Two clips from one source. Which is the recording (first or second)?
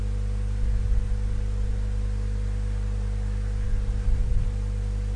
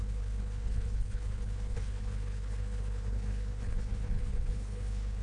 first